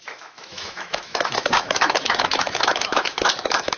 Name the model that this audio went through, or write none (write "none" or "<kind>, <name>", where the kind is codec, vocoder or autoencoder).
autoencoder, DAC-VAE